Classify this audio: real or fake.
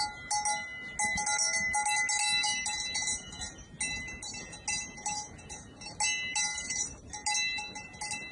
real